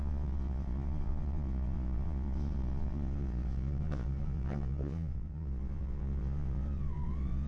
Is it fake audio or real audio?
fake